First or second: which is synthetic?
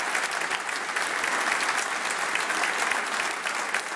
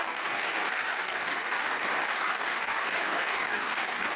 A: second